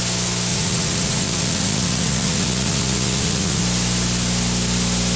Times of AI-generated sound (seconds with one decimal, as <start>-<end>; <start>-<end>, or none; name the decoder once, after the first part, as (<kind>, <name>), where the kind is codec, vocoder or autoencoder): 0.5-3.6 (vocoder, Vocos)